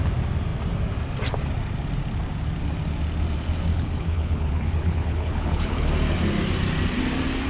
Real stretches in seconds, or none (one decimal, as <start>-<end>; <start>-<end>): 0.0-3.7; 5.9-7.5